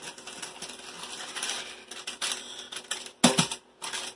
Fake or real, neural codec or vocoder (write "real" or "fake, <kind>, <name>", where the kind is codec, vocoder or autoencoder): real